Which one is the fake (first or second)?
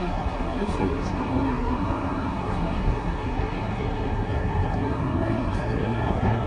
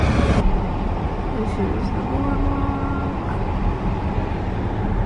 first